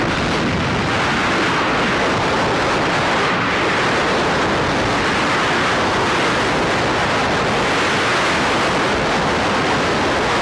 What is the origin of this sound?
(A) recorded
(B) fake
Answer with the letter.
A